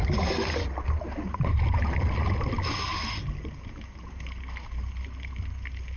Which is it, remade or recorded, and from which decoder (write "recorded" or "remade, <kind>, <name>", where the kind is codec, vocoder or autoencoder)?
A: recorded